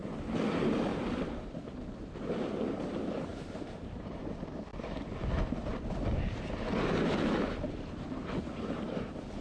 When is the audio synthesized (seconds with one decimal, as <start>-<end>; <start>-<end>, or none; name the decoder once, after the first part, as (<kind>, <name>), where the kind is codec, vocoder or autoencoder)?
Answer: 0.9-2.2 (vocoder, BigVGAN v2); 3.3-4.2